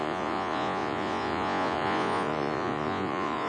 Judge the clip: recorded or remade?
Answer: remade